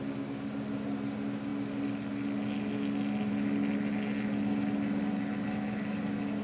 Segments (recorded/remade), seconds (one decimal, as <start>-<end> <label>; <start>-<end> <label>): 0.0-6.4 recorded

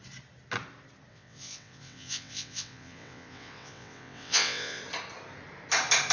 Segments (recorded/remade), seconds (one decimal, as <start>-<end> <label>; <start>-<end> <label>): 0.0-1.1 recorded; 1.1-4.8 remade; 4.8-6.1 recorded

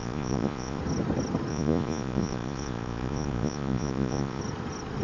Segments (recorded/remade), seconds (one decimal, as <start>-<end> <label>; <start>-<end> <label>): 0.0-0.8 remade; 0.8-1.5 recorded; 1.5-4.4 remade; 4.4-5.0 recorded

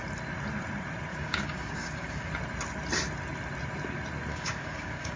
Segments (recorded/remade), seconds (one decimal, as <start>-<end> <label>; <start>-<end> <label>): 0.0-1.1 recorded; 1.1-2.3 remade; 2.3-4.3 recorded; 4.3-5.2 remade

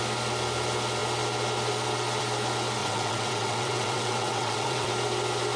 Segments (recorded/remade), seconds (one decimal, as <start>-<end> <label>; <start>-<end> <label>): 0.0-2.8 recorded; 2.8-4.9 remade; 4.9-5.6 recorded

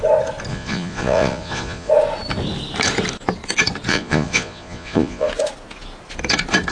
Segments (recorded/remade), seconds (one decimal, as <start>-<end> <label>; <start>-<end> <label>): 0.0-0.5 recorded; 0.5-1.9 remade; 1.9-3.9 recorded; 3.9-5.3 remade; 5.3-6.7 recorded